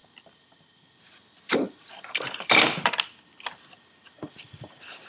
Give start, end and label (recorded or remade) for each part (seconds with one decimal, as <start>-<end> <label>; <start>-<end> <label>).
0.0-5.1 recorded